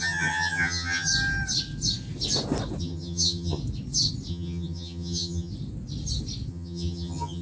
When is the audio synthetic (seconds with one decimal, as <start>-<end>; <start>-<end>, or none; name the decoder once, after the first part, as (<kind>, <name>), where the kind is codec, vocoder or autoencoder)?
0.0-1.1 (vocoder, HiFi-GAN); 2.8-3.6; 4.3-5.5; 6.5-7.4